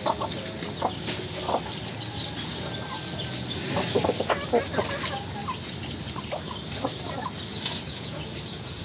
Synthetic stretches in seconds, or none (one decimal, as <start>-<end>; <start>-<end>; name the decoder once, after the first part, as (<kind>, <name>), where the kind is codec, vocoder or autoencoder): 7.5-8.8 (vocoder, Vocos)